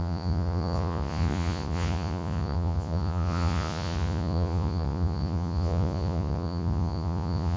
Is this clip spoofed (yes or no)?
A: yes